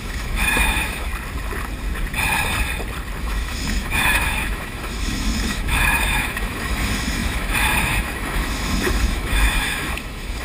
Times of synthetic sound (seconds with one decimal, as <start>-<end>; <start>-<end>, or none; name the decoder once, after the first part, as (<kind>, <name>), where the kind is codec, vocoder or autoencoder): 0.0-1.1 (autoencoder, DAC-VAE); 3.2-10.4